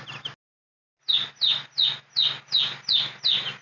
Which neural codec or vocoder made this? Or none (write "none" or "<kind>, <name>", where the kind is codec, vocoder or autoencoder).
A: none